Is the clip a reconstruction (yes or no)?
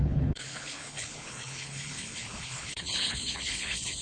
yes